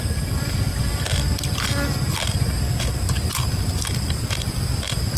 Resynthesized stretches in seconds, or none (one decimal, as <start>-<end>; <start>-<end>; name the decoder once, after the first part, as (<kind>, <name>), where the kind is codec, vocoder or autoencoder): 0.0-0.9 (vocoder, BigVGAN v2); 4.0-5.2